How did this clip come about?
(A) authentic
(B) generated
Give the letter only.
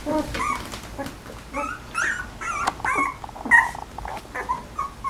A